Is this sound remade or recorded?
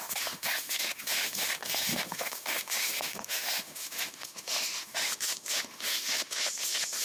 remade